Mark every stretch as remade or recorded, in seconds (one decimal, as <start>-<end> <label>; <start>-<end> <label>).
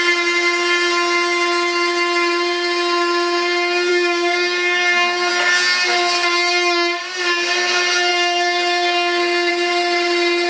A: 0.0-3.9 recorded; 3.9-5.3 remade; 5.3-8.1 recorded; 8.1-9.5 remade; 9.5-10.5 recorded